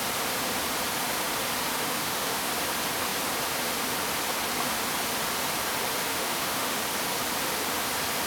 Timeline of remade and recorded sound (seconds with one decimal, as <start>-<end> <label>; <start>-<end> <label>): 0.0-1.7 recorded; 1.7-2.5 remade; 2.5-6.1 recorded; 6.1-6.8 remade; 6.8-8.3 recorded